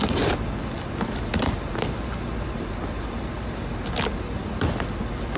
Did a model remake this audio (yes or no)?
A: no